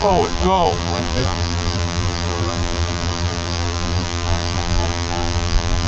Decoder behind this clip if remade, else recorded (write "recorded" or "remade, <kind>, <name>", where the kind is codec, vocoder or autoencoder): remade, vocoder, BigVGAN v2